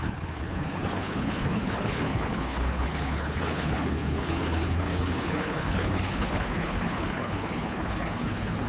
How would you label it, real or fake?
fake